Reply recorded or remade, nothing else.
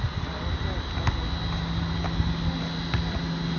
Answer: recorded